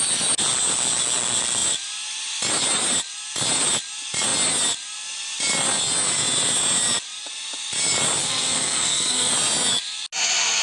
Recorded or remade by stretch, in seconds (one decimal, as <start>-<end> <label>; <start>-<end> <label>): 0.0-8.2 recorded; 8.2-9.3 remade; 9.3-10.6 recorded